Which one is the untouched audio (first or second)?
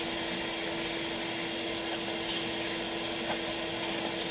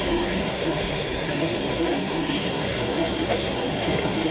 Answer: first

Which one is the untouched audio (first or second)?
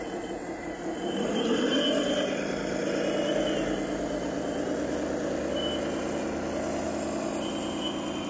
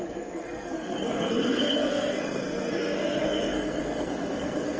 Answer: first